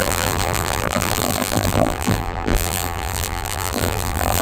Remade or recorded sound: remade